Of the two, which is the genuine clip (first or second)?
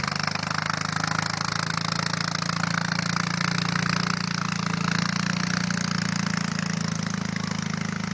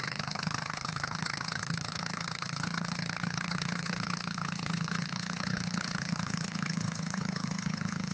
first